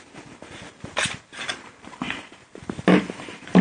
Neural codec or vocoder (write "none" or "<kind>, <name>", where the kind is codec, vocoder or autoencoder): none